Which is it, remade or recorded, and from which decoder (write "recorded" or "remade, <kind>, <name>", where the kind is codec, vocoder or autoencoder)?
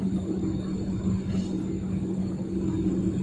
remade, codec, DAC